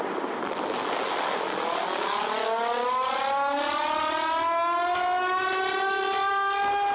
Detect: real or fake real